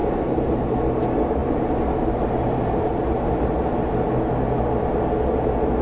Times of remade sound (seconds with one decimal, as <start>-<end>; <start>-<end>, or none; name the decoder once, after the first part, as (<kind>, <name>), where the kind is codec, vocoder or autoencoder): 0.0-0.5 (vocoder, BigVGAN v2); 1.4-3.5